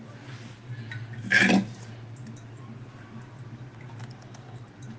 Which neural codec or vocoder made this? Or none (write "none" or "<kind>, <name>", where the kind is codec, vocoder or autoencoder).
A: none